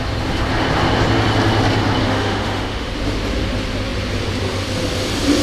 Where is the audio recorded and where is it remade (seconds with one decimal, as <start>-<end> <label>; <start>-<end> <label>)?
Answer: 0.0-2.0 recorded; 2.0-2.9 remade; 2.9-5.4 recorded